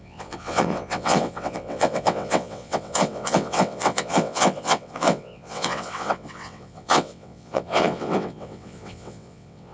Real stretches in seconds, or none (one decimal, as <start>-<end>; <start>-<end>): none